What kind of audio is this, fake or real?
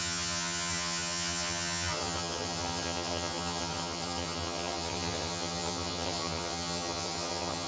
fake